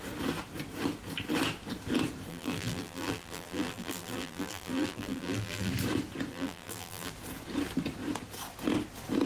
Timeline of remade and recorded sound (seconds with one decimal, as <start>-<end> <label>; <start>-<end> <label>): 0.0-2.3 recorded; 2.3-5.7 remade; 5.7-6.3 recorded; 6.3-7.1 remade; 7.1-9.3 recorded